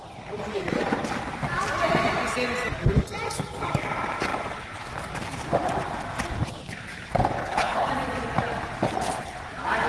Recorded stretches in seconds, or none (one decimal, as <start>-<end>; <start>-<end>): 0.0-7.4; 7.9-9.9